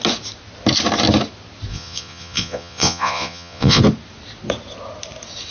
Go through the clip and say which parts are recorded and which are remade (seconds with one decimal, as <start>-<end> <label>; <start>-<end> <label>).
0.0-1.7 recorded; 1.7-3.8 remade; 3.8-5.5 recorded